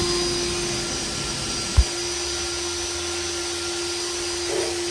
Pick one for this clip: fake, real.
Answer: real